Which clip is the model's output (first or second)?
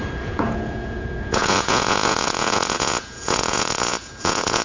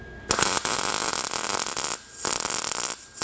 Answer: first